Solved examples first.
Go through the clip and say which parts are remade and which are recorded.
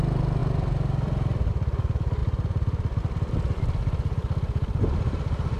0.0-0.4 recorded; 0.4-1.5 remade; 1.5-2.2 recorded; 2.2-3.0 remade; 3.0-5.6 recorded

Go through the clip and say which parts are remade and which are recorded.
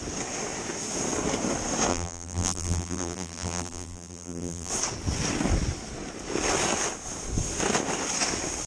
0.0-1.9 recorded; 1.9-4.7 remade; 4.7-8.7 recorded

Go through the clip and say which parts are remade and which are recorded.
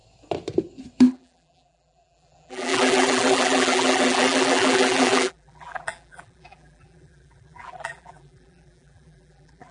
0.0-1.1 recorded; 1.1-9.7 remade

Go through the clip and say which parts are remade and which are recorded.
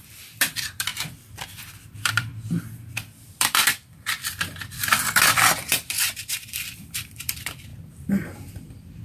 0.0-0.9 remade; 0.9-1.9 recorded; 1.9-7.7 remade; 7.7-8.5 recorded; 8.5-9.0 remade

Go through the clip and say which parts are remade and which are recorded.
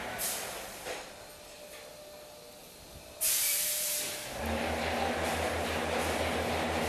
0.0-2.6 recorded; 2.6-4.4 remade; 4.4-6.9 recorded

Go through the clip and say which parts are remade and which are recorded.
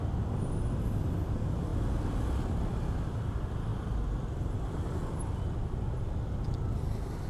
0.0-7.3 recorded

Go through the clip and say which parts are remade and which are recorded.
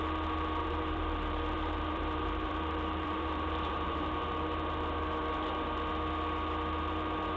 0.0-0.6 recorded; 0.6-4.1 remade; 4.1-7.4 recorded